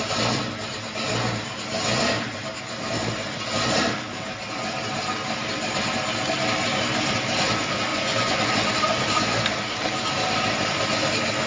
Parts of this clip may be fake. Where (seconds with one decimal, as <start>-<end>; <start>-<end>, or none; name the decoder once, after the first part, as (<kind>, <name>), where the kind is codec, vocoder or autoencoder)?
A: 7.9-8.5 (vocoder, Vocos)